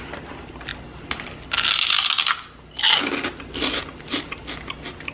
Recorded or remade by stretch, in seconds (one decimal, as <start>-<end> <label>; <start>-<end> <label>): 0.0-5.1 recorded